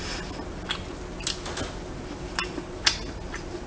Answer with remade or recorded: recorded